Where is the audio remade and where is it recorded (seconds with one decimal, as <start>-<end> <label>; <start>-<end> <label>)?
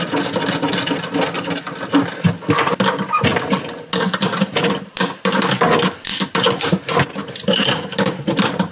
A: 0.0-8.7 recorded